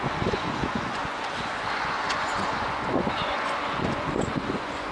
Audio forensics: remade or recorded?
remade